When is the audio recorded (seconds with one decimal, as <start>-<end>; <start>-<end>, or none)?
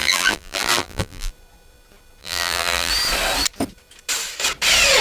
1.3-2.2; 2.9-5.0